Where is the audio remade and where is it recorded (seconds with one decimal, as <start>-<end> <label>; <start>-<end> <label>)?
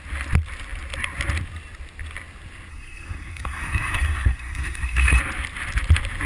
0.0-2.7 recorded; 2.7-5.2 remade; 5.2-6.3 recorded